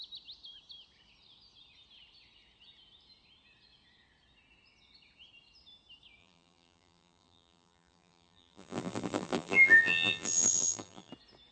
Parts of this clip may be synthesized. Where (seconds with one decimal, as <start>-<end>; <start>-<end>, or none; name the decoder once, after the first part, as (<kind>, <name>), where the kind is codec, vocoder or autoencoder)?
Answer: 6.2-11.1 (vocoder, BigVGAN v2)